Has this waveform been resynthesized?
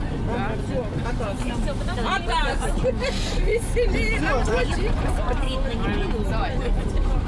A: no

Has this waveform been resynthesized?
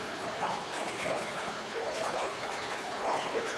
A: yes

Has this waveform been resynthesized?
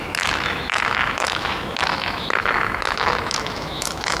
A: yes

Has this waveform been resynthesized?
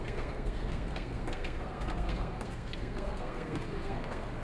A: yes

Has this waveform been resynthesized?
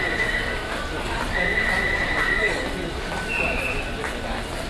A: no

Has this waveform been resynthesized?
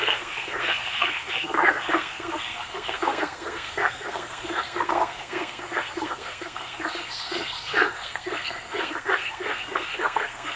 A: yes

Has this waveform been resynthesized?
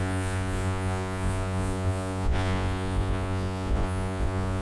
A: yes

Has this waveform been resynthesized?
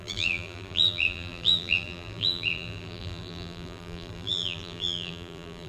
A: yes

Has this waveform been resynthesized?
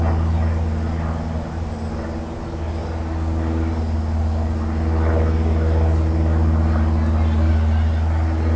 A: no